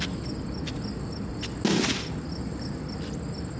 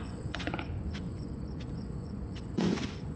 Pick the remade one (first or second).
second